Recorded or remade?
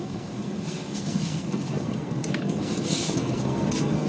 remade